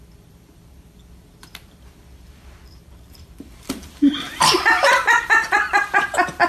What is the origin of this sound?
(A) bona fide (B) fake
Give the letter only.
B